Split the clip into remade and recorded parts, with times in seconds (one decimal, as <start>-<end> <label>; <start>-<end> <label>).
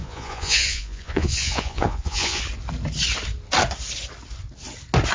0.0-2.4 remade; 2.4-5.1 recorded